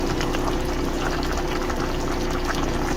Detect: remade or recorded recorded